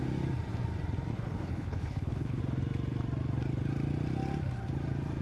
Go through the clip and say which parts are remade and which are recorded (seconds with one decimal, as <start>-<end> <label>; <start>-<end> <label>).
0.0-1.1 recorded; 1.1-2.4 remade; 2.4-5.2 recorded

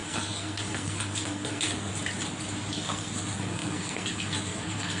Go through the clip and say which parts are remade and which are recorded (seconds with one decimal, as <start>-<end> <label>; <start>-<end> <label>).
0.0-1.9 remade; 1.9-2.7 recorded; 2.7-5.0 remade